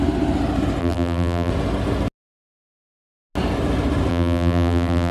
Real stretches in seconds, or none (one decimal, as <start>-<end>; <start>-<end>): 0.0-0.8; 1.5-4.1